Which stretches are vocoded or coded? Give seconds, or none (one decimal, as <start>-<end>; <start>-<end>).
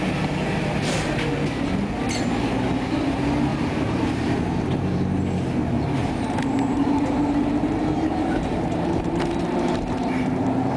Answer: 3.5-5.2; 6.0-10.4